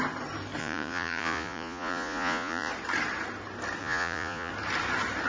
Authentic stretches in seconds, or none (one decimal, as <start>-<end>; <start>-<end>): 0.0-0.6; 2.7-3.8; 4.5-5.3